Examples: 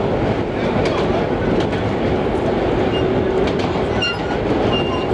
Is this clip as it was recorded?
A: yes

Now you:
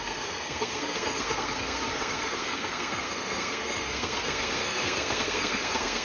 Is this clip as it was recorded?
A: no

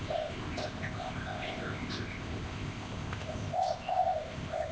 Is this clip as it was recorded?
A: no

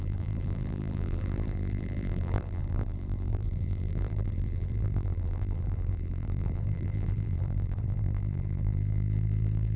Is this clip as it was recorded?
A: no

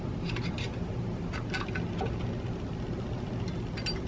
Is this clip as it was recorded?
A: yes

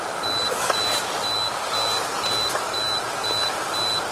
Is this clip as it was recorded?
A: yes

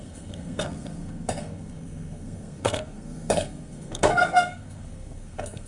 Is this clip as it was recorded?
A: no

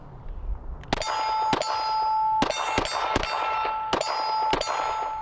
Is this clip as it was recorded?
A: yes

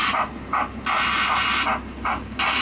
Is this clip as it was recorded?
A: yes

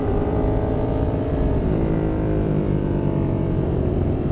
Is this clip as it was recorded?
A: no